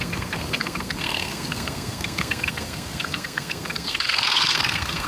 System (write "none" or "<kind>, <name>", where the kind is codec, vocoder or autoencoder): codec, SNAC